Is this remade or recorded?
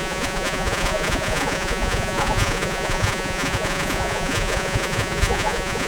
remade